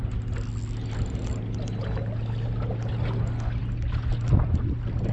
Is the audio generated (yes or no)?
no